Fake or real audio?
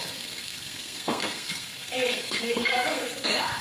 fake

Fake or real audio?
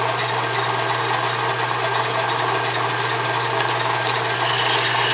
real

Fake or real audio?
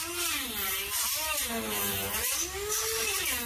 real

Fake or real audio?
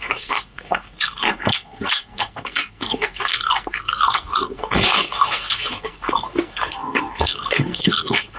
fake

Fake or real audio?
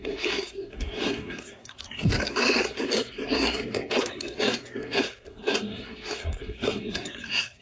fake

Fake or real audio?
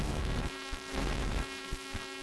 fake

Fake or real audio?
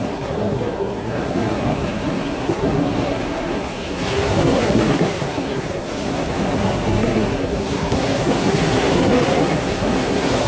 fake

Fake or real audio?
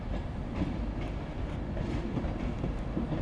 real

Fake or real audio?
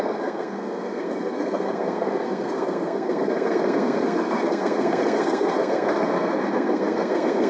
fake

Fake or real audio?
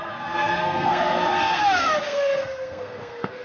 fake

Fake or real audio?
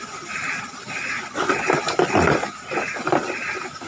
real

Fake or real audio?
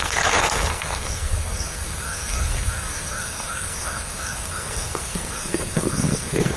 fake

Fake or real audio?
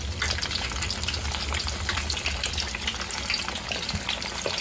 real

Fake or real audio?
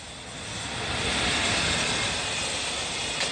real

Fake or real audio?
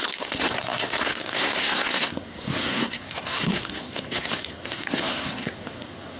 fake